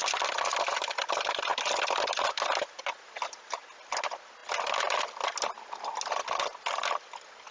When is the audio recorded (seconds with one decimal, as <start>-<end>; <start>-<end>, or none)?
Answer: 0.0-7.5